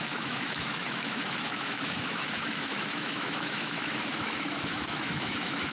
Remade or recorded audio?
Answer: remade